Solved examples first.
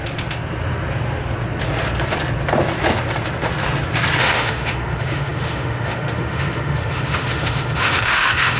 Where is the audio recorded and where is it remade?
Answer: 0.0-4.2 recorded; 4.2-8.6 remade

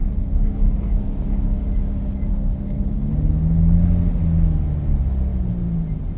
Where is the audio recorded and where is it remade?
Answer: 0.0-1.6 remade; 1.6-2.3 recorded; 2.3-3.1 remade; 3.1-6.2 recorded

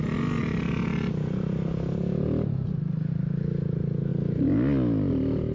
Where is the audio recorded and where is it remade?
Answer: 0.0-5.5 recorded

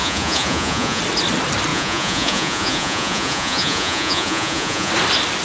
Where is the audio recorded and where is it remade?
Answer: 0.0-1.0 remade; 1.0-1.7 recorded; 1.7-4.9 remade; 4.9-5.4 recorded

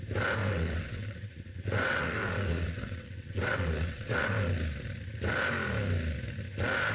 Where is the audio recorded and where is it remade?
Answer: 0.0-0.4 recorded; 0.4-4.5 remade; 4.5-6.9 recorded

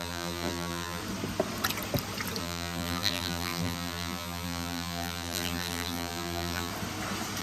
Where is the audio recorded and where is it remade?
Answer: 0.0-1.0 remade; 1.0-2.4 recorded; 2.4-6.7 remade; 6.7-7.4 recorded

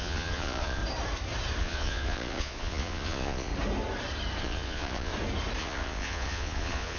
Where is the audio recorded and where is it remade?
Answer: 0.0-0.8 remade; 0.8-1.6 recorded; 1.6-3.5 remade; 3.5-4.4 recorded; 4.4-5.1 remade; 5.1-5.6 recorded; 5.6-7.0 remade

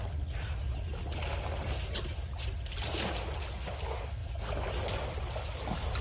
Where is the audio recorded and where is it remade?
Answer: 0.0-6.0 recorded